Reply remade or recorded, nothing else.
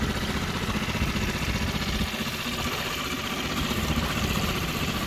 recorded